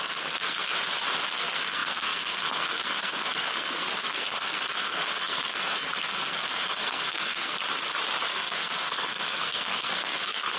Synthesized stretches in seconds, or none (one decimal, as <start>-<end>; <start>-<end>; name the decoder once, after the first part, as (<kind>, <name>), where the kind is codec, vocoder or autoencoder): 0.0-0.7 (codec, SNAC); 1.3-7.6; 8.3-10.6